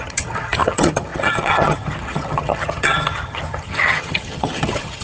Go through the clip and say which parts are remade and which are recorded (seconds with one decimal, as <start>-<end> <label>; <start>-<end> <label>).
0.0-5.0 remade